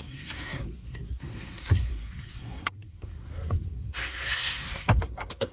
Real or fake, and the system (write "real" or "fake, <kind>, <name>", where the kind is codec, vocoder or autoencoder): fake, codec, SNAC